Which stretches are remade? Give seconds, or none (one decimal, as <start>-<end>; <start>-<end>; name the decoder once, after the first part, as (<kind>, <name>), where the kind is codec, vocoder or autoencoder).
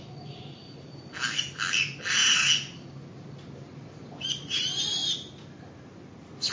0.0-2.2 (vocoder, BigVGAN v2); 3.6-5.0